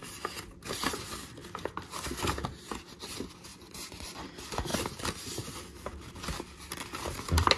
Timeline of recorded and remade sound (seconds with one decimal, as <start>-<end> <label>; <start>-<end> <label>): 0.0-3.5 recorded; 3.5-4.3 remade; 4.3-7.6 recorded